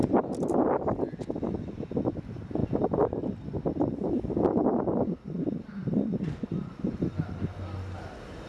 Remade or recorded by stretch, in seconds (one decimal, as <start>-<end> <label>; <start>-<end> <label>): 0.0-8.5 recorded